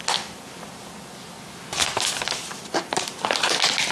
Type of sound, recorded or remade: recorded